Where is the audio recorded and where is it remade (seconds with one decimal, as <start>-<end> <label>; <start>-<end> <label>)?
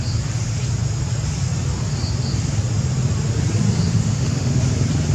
0.0-3.9 recorded; 3.9-4.6 remade; 4.6-5.1 recorded